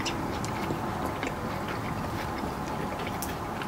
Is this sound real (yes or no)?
yes